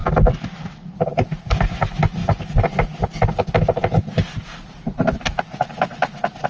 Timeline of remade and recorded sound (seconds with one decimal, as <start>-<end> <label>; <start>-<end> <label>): 0.0-1.1 recorded; 1.1-2.2 remade; 2.2-4.1 recorded; 4.1-6.5 remade